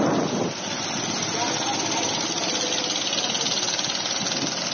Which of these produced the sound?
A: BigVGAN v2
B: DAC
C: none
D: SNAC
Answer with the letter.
C